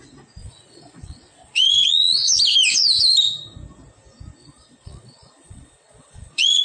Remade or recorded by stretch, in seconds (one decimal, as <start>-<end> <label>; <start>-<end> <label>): 0.0-0.4 recorded; 0.4-2.3 remade; 2.3-4.4 recorded; 4.4-6.6 remade